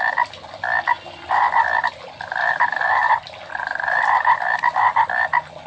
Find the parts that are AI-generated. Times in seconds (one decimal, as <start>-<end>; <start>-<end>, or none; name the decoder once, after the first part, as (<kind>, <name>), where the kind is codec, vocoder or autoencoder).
none